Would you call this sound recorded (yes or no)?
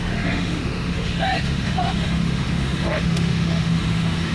no